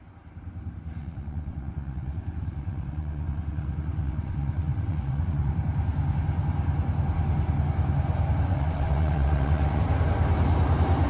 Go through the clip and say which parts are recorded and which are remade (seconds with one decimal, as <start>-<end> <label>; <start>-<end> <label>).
0.0-1.0 recorded; 1.0-5.5 remade; 5.5-8.5 recorded; 8.5-9.8 remade; 9.8-11.1 recorded